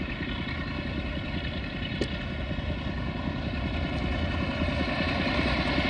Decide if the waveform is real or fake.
real